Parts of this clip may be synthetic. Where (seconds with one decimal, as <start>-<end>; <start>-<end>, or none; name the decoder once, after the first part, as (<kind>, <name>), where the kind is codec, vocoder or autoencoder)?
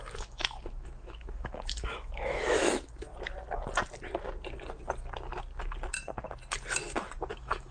0.0-3.1 (autoencoder, DAC-VAE); 7.3-7.7